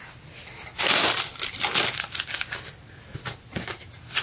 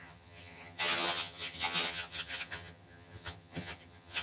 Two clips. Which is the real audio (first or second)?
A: first